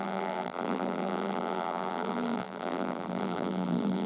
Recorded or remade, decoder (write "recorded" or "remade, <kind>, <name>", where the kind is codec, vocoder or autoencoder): remade, vocoder, BigVGAN v2